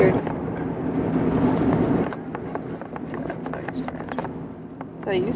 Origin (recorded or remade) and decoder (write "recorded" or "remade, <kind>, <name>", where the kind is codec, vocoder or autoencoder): recorded